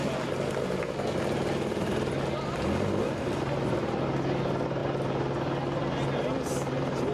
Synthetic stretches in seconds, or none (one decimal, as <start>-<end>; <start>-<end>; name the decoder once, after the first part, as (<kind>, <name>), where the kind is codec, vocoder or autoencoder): none

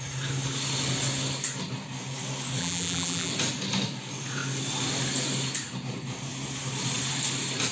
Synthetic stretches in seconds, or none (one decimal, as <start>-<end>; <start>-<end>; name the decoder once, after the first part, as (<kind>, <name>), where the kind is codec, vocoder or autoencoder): 2.6-3.3 (vocoder, BigVGAN v2)

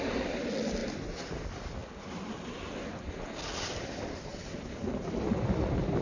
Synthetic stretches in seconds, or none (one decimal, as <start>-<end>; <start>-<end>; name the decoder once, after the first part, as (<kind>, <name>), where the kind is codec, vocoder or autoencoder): none

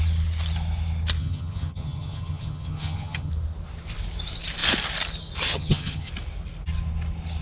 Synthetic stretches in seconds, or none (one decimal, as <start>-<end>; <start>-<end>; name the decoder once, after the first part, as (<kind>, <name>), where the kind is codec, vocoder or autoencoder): 1.2-3.3 (vocoder, HiFi-GAN); 5.5-6.1

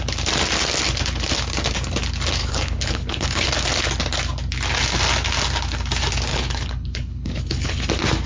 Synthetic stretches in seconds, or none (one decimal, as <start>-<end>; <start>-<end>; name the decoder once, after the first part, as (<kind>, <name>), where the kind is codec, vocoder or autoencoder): 2.4-3.5 (codec, HILCodec); 6.3-7.8

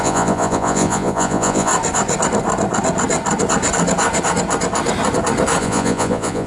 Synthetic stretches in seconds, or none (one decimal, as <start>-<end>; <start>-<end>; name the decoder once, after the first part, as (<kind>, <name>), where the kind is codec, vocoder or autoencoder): 0.0-1.7 (vocoder, Vocos); 5.6-6.5

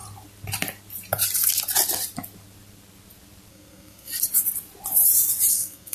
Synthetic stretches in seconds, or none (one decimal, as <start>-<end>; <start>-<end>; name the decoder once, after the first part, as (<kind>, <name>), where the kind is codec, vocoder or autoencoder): 3.5-4.1 (codec, SNAC); 5.5-5.9